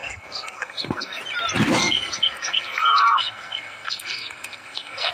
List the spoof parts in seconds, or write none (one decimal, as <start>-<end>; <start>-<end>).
0.0-1.2; 1.8-5.1